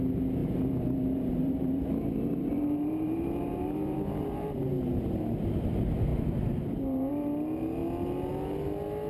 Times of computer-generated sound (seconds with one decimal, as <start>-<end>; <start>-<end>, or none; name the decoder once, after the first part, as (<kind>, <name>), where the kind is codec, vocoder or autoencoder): 0.4-5.0 (vocoder, BigVGAN v2)